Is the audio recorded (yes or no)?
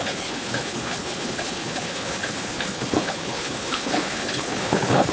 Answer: no